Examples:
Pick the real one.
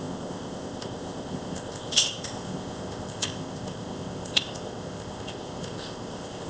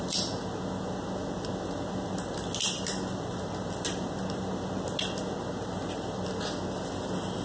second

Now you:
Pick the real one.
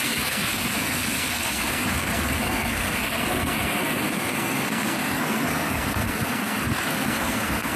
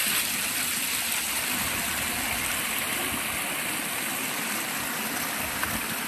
second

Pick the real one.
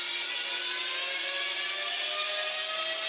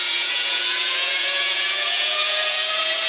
first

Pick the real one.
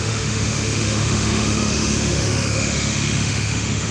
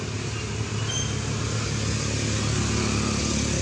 second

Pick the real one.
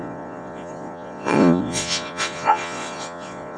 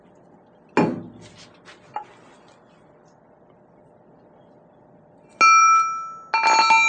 second